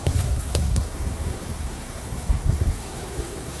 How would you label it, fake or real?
fake